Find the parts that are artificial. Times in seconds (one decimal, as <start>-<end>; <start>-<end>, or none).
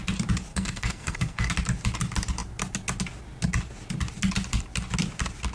0.5-1.5